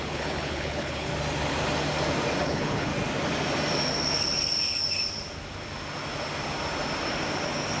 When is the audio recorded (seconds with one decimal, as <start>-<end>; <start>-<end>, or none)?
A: 1.1-2.4; 2.9-7.8